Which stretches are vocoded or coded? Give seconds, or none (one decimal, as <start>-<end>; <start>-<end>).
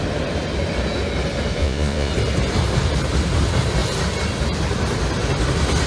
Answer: 1.6-2.1